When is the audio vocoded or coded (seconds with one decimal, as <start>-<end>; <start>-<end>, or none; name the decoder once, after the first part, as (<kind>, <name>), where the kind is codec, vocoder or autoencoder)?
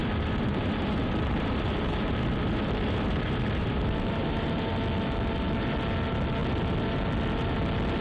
0.0-4.7 (vocoder, BigVGAN v2)